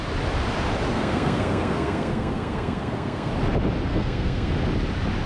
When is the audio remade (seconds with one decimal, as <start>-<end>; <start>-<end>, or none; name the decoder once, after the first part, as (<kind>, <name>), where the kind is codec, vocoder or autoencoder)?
0.9-3.3 (codec, SNAC); 3.9-4.5